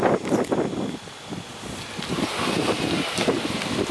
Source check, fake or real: real